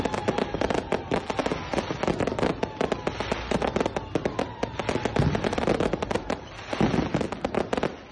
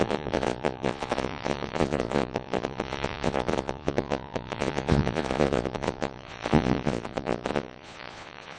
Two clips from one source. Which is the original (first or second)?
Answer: first